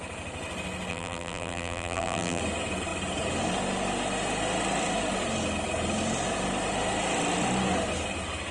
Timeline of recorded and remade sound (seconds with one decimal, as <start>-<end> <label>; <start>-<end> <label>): 0.0-0.9 recorded; 0.9-2.4 remade; 2.4-8.5 recorded